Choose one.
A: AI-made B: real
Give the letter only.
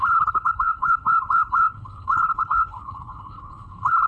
A